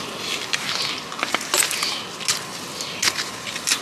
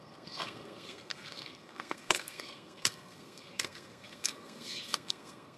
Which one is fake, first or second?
second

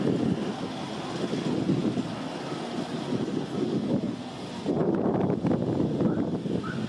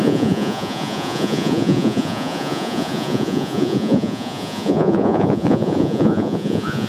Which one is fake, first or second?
second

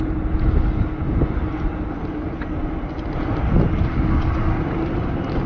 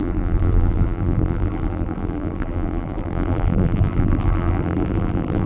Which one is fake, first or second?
second